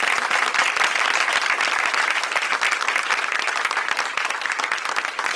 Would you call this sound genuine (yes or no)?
yes